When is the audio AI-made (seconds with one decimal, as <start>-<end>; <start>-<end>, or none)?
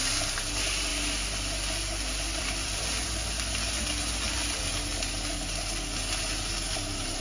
0.9-4.6